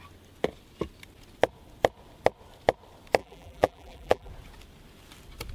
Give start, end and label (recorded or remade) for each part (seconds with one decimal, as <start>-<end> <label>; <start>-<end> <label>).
0.0-3.2 recorded; 3.2-4.3 remade; 4.3-5.5 recorded